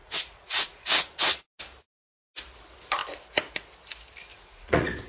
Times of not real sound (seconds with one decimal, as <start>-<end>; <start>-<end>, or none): 0.0-1.4; 4.3-5.1